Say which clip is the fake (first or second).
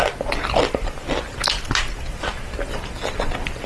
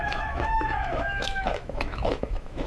second